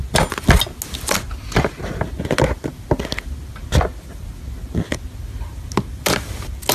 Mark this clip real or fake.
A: real